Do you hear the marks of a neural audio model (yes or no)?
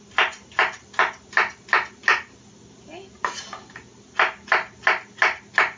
no